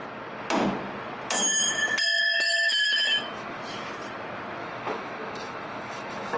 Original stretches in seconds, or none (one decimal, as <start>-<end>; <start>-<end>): 0.0-2.2; 3.6-4.6